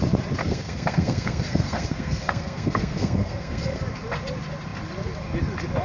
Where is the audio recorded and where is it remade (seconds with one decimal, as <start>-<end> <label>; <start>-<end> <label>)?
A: 0.0-0.4 recorded; 0.4-3.8 remade; 3.8-5.8 recorded